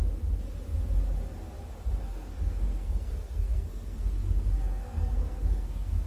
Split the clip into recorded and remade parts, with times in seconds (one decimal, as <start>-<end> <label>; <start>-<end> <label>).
0.0-2.0 recorded; 2.0-6.1 remade